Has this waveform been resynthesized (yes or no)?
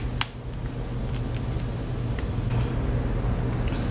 no